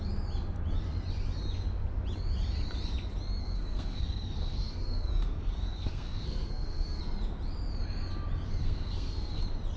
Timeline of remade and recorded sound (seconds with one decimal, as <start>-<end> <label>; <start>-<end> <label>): 0.0-3.4 recorded; 3.4-7.0 remade; 7.0-8.6 recorded; 8.6-9.4 remade; 9.4-9.8 recorded